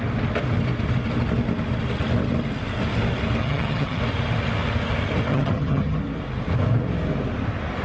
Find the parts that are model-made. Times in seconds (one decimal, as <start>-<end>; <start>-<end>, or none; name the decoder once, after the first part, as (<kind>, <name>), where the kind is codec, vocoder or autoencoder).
3.4-4.0 (vocoder, HiFi-GAN); 5.3-6.0